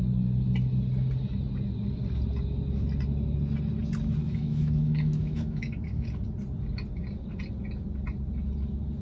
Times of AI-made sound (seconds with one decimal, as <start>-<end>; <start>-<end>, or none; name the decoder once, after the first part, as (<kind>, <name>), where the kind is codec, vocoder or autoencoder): 4.2-6.1 (autoencoder, DAC-VAE)